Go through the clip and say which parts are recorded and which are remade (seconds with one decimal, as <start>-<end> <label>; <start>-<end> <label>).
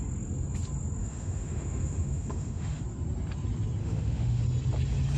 0.0-1.0 recorded; 1.0-2.8 remade; 2.8-3.8 recorded; 3.8-4.4 remade; 4.4-5.2 recorded